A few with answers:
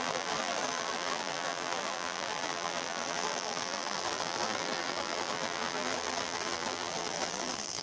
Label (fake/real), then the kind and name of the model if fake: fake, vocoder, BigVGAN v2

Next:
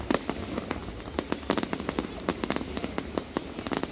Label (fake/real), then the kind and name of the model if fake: real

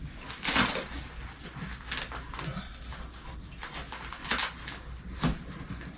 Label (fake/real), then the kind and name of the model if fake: real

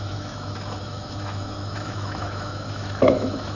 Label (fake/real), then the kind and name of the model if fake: fake, autoencoder, DAC-VAE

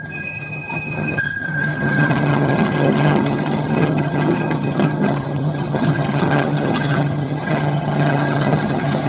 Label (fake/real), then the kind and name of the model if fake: fake, vocoder, HiFi-GAN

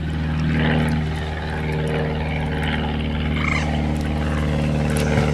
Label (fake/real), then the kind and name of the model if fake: real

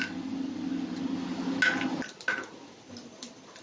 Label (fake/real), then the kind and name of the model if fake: real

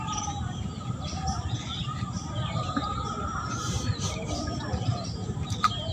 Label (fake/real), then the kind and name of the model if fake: fake, vocoder, BigVGAN v2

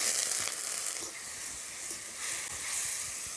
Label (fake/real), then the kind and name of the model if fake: real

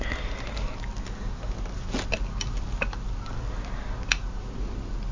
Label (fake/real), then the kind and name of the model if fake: real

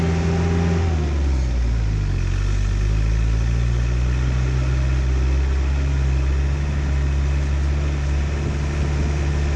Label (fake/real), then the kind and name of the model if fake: real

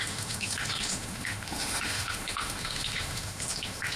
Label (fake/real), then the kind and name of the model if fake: fake, autoencoder, DAC-VAE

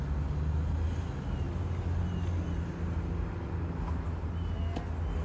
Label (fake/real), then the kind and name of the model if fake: real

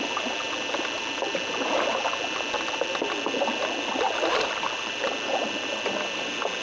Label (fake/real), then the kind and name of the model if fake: real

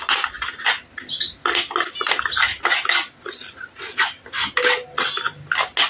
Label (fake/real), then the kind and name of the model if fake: real